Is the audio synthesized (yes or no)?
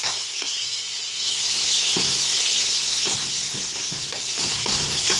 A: yes